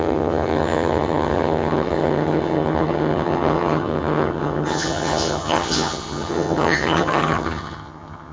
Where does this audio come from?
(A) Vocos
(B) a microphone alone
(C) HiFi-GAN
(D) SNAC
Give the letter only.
C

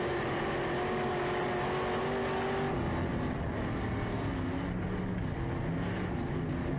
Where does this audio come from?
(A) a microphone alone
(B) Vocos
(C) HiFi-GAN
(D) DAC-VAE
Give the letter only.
A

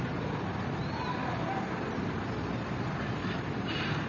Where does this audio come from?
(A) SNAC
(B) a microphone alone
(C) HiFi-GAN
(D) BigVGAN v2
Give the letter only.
B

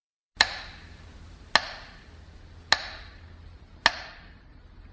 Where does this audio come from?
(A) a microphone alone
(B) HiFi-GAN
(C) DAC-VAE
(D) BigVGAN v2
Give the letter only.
A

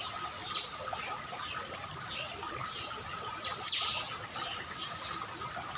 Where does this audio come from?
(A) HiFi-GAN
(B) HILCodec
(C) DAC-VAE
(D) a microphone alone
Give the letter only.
D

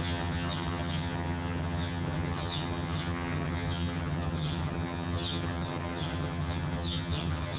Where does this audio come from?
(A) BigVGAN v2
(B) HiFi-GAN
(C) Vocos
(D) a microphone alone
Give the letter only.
B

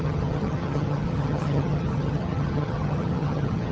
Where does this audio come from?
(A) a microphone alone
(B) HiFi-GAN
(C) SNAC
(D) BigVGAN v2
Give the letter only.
B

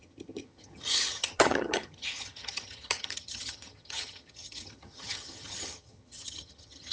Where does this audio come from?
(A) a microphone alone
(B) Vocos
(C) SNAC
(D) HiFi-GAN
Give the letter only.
D